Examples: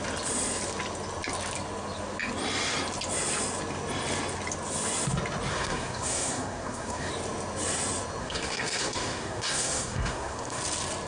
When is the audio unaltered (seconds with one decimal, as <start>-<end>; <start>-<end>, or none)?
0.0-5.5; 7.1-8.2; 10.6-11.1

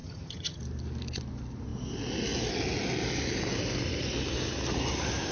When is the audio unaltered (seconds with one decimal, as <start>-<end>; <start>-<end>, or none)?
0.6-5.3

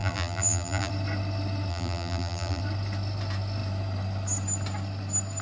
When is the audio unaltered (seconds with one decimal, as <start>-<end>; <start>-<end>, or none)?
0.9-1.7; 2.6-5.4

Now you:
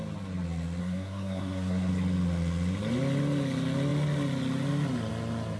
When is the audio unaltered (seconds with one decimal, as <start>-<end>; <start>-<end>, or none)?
0.0-0.8; 1.9-5.6

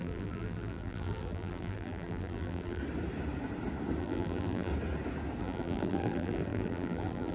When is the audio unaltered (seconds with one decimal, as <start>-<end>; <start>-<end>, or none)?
2.8-4.0; 4.7-5.4